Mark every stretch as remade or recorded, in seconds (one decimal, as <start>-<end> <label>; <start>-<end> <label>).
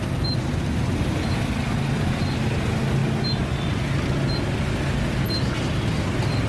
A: 0.0-6.5 recorded